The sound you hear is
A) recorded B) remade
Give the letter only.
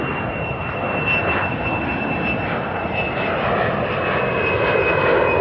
A